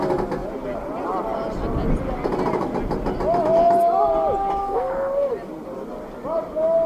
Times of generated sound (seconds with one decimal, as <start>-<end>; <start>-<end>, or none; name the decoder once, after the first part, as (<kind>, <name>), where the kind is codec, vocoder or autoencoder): 4.6-5.3 (codec, SNAC)